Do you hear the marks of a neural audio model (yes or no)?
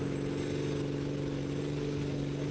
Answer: no